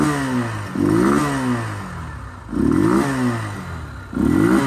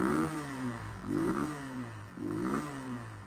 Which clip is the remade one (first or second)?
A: second